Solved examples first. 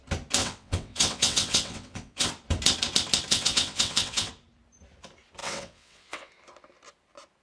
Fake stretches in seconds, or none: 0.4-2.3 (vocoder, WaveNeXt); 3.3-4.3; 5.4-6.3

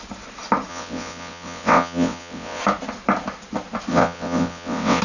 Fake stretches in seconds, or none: 0.7-2.6 (vocoder, WaveNeXt); 3.9-5.0

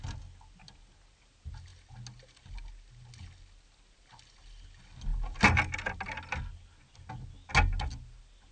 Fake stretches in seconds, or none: none